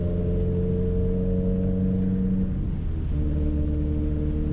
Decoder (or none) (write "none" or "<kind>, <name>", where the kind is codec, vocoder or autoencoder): none